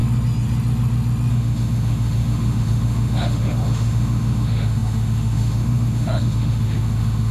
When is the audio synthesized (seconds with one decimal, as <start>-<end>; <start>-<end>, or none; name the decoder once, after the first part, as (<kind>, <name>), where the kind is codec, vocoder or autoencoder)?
1.3-7.3 (autoencoder, DAC-VAE)